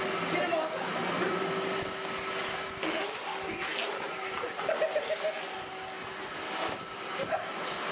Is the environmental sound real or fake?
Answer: fake